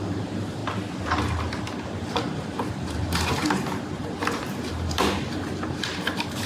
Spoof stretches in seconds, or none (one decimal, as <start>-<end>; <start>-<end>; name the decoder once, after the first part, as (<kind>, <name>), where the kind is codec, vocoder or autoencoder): 0.0-0.6 (vocoder, BigVGAN v2); 2.1-3.4; 4.5-6.5